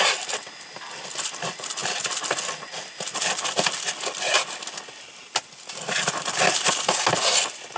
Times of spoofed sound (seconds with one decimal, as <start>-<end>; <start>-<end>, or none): none